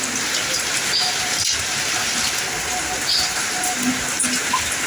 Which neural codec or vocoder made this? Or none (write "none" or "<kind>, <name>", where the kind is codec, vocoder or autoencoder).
none